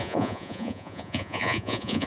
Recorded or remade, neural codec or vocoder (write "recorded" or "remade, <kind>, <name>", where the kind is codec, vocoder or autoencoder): remade, vocoder, Vocos